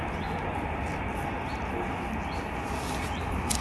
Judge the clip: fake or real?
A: real